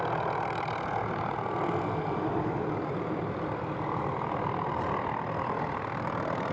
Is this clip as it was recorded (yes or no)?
yes